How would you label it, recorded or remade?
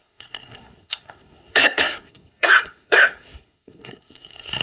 remade